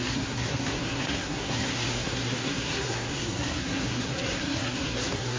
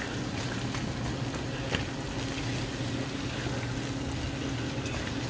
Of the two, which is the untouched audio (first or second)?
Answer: second